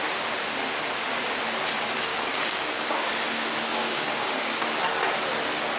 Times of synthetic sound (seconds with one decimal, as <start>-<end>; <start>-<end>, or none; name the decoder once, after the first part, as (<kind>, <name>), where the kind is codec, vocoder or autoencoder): 2.1-3.1 (codec, DAC); 3.7-4.7